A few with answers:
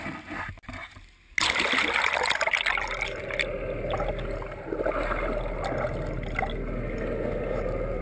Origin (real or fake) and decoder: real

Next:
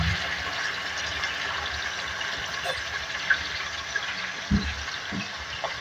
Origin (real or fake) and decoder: real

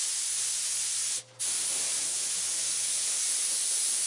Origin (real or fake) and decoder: real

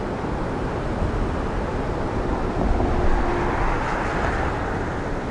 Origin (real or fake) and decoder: real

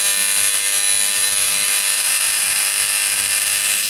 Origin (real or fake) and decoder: fake, autoencoder, DAC-VAE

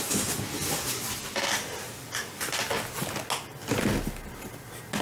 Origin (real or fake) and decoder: real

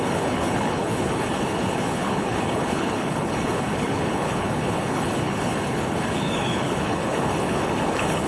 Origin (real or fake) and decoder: fake, codec, HILCodec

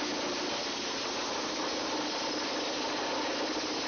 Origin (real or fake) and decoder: real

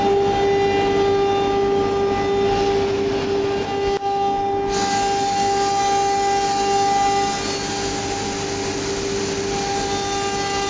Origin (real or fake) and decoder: real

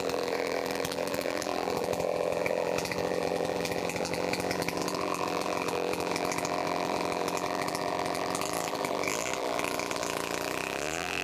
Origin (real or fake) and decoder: fake, vocoder, BigVGAN v2